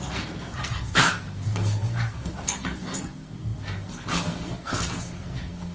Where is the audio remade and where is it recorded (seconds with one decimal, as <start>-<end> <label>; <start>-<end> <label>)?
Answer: 0.0-5.7 remade